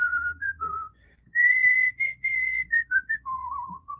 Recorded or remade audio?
remade